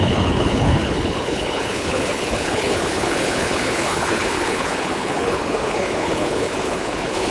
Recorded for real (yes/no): no